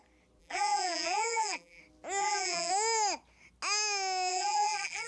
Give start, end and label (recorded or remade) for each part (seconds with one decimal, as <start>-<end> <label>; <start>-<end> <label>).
0.0-0.4 recorded; 0.4-1.8 remade; 1.8-2.2 recorded; 2.2-2.7 remade; 2.7-4.3 recorded; 4.3-5.1 remade